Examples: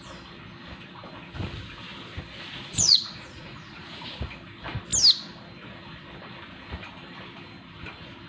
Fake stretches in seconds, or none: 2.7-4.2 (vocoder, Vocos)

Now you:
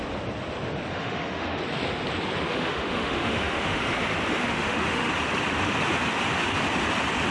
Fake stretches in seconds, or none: 0.9-1.6 (autoencoder, DAC-VAE); 2.5-3.8; 4.4-5.1